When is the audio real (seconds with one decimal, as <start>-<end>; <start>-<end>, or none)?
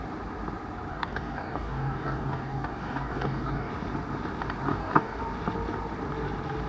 0.0-0.9; 3.7-4.7; 5.2-6.7